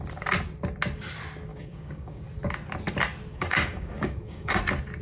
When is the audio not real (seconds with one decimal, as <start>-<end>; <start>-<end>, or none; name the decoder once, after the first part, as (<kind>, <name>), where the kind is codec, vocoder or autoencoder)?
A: 1.5-2.2 (codec, DAC); 3.3-4.6